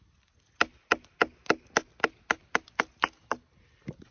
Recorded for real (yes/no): yes